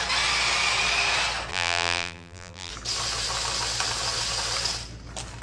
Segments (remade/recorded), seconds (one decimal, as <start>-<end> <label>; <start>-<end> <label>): 0.0-1.5 recorded; 1.5-2.7 remade; 2.7-5.4 recorded